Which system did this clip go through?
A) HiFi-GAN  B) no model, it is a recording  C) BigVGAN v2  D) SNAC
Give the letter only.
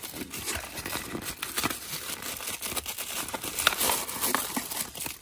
B